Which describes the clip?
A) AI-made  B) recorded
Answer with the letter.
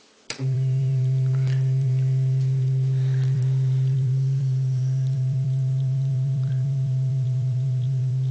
A